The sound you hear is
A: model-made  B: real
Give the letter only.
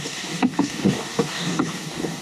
A